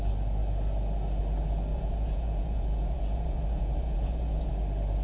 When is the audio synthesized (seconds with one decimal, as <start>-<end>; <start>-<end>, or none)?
1.7-4.5